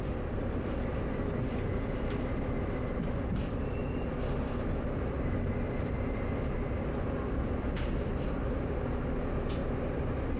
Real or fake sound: real